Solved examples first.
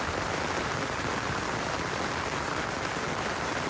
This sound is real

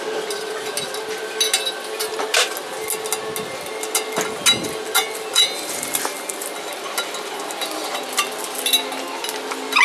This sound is real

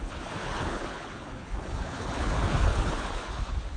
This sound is fake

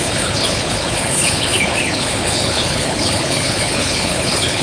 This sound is fake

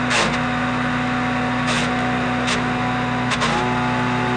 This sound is real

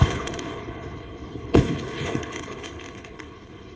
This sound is fake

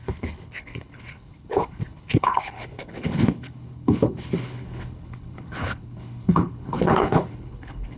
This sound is fake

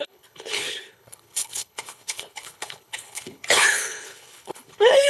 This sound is fake